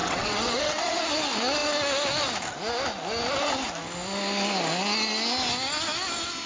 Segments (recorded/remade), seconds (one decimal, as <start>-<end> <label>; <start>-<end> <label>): 0.0-1.1 remade; 1.1-6.5 recorded